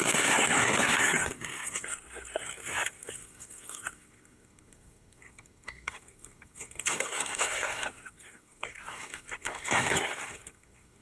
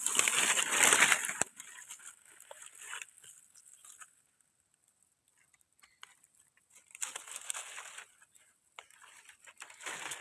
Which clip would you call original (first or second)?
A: second